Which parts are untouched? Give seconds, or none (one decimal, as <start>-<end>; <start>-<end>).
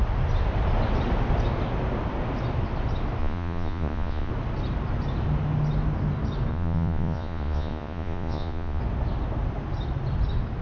0.0-3.2; 4.3-6.5; 8.8-10.6